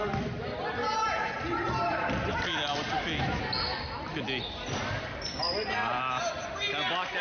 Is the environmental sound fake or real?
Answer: real